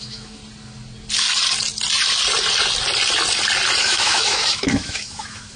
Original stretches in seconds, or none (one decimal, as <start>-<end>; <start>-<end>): 0.4-3.8